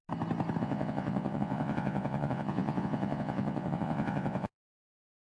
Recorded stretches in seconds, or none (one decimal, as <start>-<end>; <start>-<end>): 0.0-0.6